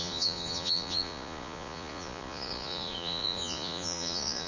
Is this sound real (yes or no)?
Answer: no